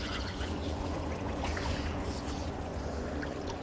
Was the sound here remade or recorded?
remade